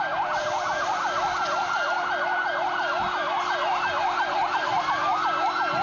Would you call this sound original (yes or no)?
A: yes